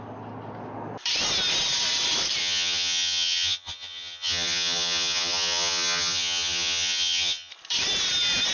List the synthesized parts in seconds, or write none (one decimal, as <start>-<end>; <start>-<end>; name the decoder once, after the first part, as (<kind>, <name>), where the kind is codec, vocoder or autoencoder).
2.4-7.5 (vocoder, HiFi-GAN)